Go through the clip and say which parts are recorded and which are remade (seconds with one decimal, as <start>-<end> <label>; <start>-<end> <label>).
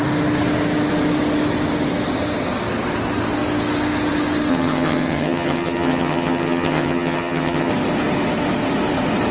0.0-4.5 recorded; 4.5-7.7 remade; 7.7-9.3 recorded